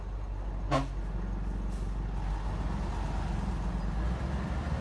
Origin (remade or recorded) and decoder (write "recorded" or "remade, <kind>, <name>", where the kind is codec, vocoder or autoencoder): recorded